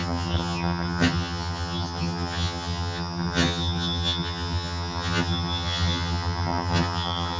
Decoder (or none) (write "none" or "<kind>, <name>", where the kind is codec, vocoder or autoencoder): vocoder, HiFi-GAN